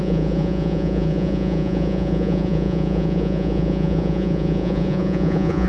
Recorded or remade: remade